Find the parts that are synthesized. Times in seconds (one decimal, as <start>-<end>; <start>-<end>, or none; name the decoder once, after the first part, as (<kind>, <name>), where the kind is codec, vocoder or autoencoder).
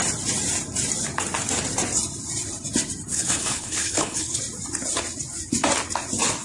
3.1-4.4 (codec, HILCodec)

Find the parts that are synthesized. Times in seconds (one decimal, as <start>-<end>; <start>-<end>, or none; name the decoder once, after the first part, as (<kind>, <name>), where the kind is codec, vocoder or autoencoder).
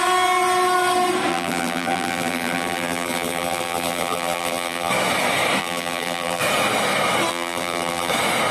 1.3-4.9 (vocoder, BigVGAN v2); 5.6-6.4; 7.3-8.1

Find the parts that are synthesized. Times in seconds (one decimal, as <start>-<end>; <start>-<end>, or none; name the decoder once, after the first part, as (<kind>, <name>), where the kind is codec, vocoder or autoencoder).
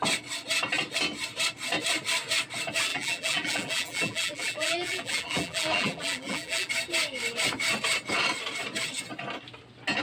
2.9-6.7 (vocoder, BigVGAN v2)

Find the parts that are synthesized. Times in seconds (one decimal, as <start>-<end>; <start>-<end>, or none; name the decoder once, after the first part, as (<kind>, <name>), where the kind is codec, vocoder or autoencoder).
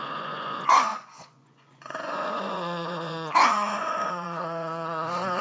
0.0-5.4 (vocoder, Vocos)